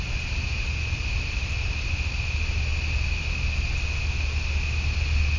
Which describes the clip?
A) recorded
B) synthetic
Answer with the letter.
A